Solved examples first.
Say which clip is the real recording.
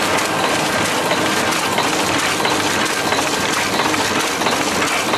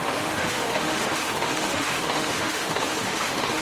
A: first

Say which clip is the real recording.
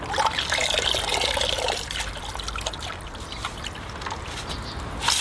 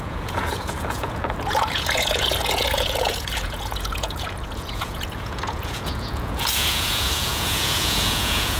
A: first